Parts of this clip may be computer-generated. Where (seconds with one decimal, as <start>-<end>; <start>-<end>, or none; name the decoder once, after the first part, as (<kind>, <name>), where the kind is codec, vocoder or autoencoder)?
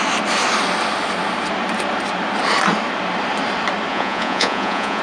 3.9-5.0 (vocoder, Vocos)